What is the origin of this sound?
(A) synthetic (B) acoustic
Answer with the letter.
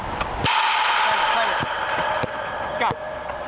B